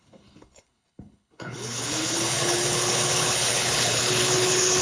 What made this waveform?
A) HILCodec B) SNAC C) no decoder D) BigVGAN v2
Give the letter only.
A